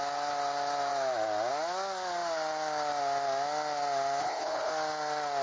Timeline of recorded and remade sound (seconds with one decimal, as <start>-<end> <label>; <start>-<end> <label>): 0.0-4.2 recorded; 4.2-4.7 remade; 4.7-5.4 recorded